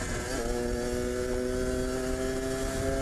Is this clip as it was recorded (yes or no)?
yes